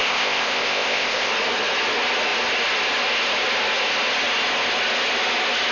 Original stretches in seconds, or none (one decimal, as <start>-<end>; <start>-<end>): 1.3-5.7